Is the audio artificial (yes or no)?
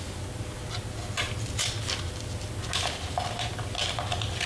no